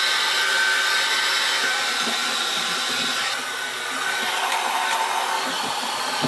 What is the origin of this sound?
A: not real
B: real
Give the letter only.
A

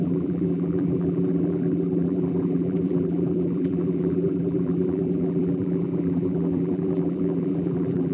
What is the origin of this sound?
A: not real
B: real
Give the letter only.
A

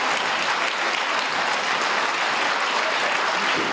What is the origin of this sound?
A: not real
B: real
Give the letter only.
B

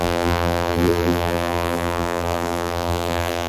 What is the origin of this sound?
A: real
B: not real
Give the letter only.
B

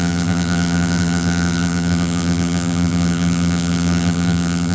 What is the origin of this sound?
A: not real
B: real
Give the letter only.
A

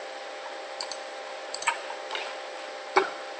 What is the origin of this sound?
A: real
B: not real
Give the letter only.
B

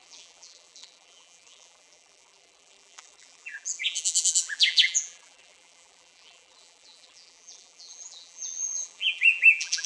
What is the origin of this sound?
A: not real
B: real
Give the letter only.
A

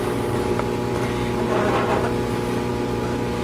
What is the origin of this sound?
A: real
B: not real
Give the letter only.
A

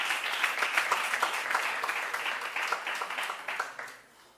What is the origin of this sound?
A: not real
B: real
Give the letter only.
B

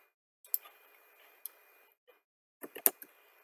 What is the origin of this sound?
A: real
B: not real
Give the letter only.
A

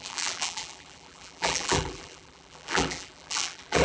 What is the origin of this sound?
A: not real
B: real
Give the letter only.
A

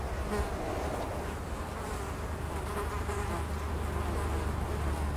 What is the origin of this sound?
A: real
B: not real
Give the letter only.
A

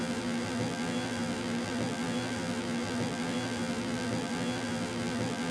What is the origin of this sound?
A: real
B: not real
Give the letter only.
B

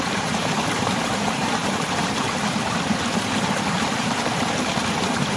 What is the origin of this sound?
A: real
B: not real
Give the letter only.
B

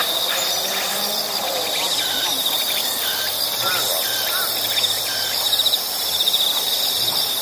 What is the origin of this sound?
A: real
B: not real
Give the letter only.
B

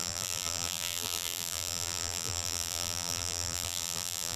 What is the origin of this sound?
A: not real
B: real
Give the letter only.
A